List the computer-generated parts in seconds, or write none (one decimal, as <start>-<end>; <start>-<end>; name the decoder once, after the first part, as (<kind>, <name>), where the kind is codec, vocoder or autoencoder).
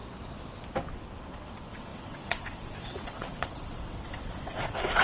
1.3-5.0 (vocoder, WaveNeXt)